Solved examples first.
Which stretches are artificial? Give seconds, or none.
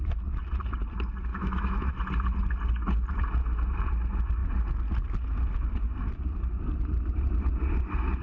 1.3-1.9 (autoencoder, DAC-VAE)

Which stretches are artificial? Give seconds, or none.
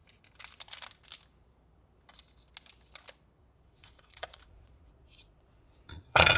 3.5-6.4 (vocoder, Vocos)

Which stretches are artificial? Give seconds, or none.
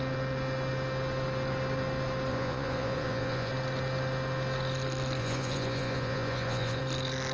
2.3-3.5 (vocoder, Vocos); 5.2-6.8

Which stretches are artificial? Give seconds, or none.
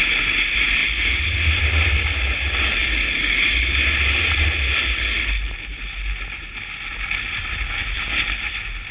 none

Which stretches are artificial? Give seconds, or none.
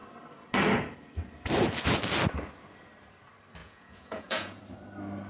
3.6-4.6 (vocoder, Vocos)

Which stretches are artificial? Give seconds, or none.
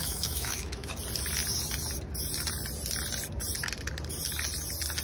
0.0-0.9 (autoencoder, DAC-VAE)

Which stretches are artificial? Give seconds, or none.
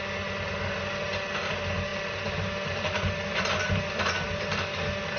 none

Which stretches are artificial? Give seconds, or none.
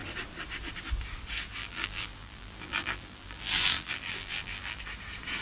1.6-4.8 (vocoder, BigVGAN v2)